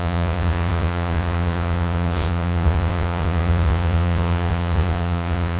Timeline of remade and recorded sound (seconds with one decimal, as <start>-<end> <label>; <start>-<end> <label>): 0.0-5.6 remade